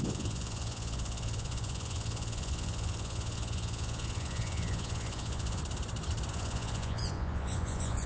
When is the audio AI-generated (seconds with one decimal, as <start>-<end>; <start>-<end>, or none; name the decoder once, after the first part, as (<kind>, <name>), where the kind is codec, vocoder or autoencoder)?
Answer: 0.0-5.6 (vocoder, Vocos); 6.3-8.1